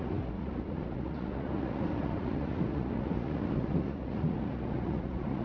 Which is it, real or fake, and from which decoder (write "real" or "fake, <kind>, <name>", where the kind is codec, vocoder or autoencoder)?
fake, vocoder, Vocos